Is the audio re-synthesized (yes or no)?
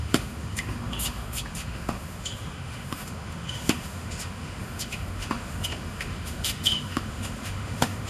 yes